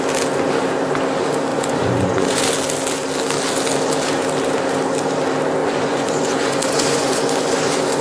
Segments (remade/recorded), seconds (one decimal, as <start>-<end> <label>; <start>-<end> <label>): 0.0-1.5 recorded; 1.5-2.4 remade; 2.4-5.6 recorded; 5.6-8.0 remade